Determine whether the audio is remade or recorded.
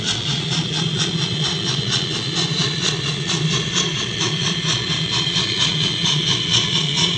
remade